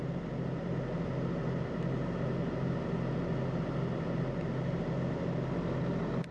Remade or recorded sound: recorded